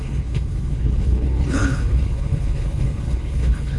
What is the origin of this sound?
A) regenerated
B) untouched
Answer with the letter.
A